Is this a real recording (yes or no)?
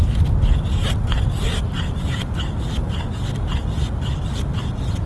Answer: yes